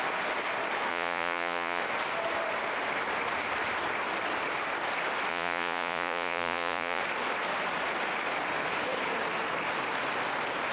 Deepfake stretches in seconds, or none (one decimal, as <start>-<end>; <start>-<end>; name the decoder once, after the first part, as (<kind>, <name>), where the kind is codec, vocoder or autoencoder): 0.9-1.8 (vocoder, Vocos); 5.3-7.0